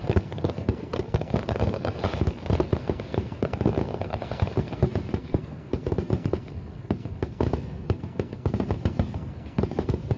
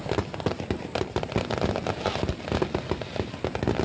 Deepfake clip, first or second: first